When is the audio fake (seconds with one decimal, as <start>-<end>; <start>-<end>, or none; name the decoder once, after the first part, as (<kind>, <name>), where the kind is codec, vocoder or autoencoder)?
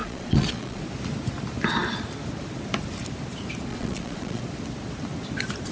0.0-0.8 (vocoder, Vocos); 3.7-4.4